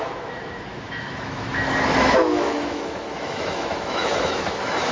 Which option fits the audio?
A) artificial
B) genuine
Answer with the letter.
A